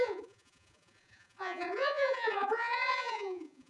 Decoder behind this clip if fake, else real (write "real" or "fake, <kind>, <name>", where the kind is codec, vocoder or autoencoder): fake, vocoder, Vocos